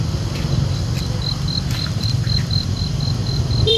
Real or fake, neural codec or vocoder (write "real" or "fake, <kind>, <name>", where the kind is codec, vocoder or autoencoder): fake, vocoder, BigVGAN v2